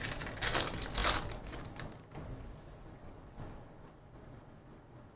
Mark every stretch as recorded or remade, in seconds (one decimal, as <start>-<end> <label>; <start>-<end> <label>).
0.0-5.2 recorded